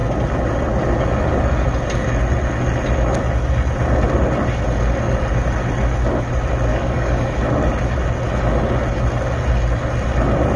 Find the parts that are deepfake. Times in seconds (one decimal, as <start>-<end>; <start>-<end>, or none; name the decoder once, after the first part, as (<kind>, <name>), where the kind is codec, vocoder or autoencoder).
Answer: 6.7-7.4 (codec, DAC)